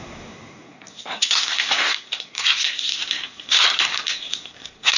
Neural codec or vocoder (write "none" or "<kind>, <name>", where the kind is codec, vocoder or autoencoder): codec, SNAC